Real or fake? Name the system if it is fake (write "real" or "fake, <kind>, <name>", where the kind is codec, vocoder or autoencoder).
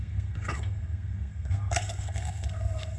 fake, codec, SNAC